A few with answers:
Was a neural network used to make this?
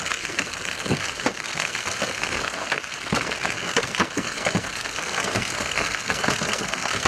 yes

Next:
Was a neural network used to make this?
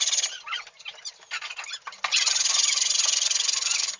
no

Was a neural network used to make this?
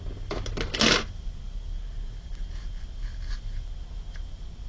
no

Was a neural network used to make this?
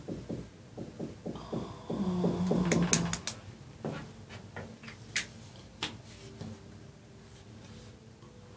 no